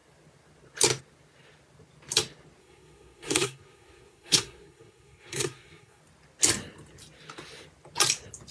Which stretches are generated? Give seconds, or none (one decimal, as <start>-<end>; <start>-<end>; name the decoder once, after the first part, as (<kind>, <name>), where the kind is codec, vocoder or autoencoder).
2.6-6.0 (codec, SNAC)